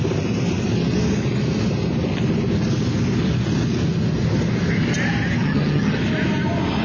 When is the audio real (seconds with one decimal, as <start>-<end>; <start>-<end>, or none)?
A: 0.0-5.4; 6.0-6.8